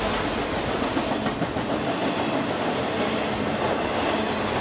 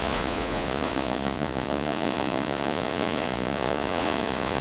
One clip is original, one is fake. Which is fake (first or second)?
second